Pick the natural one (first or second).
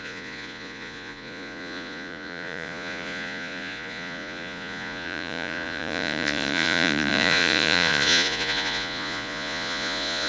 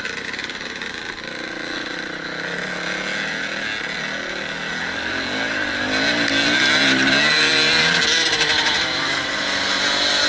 second